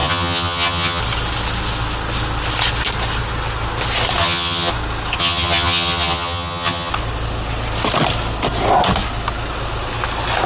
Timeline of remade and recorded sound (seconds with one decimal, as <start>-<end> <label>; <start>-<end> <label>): 0.0-1.0 remade; 1.0-4.2 recorded; 4.2-4.7 remade; 4.7-5.2 recorded; 5.2-6.9 remade; 6.9-10.5 recorded

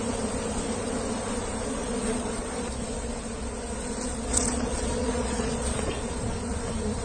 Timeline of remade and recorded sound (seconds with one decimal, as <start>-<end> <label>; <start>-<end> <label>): 0.0-1.8 recorded; 1.8-2.5 remade; 2.5-4.3 recorded; 4.3-5.9 remade; 5.9-7.0 recorded

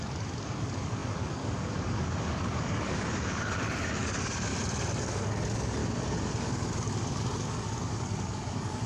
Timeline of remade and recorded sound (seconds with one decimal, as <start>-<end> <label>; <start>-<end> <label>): 0.0-4.5 remade; 4.5-5.0 recorded; 5.0-5.8 remade; 5.8-6.4 recorded; 6.4-8.9 remade

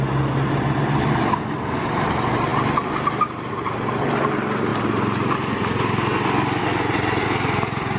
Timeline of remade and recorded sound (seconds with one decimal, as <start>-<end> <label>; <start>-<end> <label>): 0.0-8.0 recorded

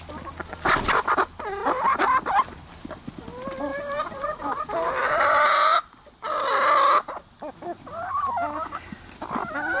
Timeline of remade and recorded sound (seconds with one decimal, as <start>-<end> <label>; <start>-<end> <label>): 0.0-1.6 recorded; 1.6-2.3 remade; 2.3-3.7 recorded; 3.7-5.4 remade; 5.4-9.8 recorded